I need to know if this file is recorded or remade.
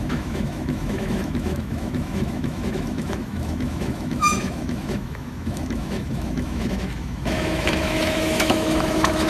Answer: remade